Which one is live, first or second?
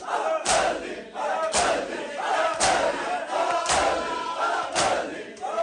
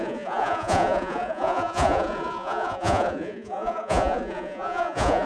first